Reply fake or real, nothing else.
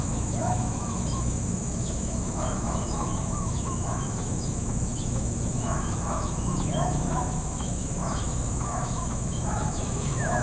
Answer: fake